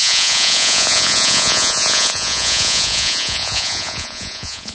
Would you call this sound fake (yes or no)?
yes